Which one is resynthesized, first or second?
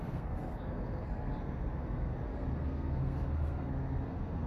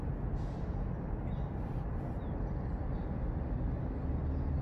first